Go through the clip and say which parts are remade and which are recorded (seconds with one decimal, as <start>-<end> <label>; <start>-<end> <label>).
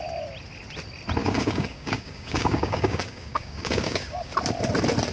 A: 0.0-1.2 recorded; 1.2-4.3 remade; 4.3-5.1 recorded